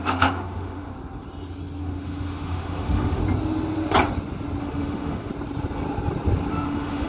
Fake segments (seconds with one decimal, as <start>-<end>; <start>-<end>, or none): 0.0-0.9; 1.8-3.2; 4.6-5.3; 6.5-7.1